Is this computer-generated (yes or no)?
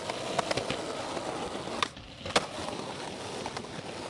no